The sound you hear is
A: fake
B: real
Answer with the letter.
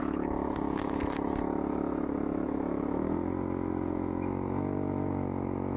A